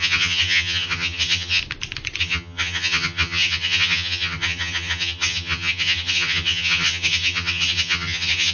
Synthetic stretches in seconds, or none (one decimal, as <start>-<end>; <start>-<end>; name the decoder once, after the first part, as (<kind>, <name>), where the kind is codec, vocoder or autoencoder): 0.0-1.6 (vocoder, HiFi-GAN); 2.2-8.5